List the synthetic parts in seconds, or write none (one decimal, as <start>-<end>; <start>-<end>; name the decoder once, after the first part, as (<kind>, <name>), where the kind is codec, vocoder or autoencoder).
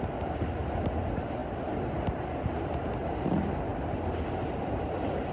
none